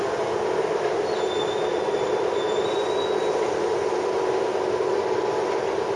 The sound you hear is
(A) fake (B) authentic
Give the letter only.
B